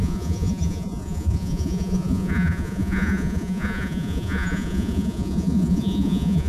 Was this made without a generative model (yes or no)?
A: no